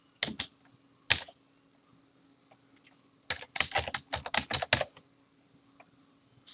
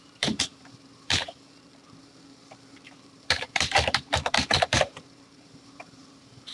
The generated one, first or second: second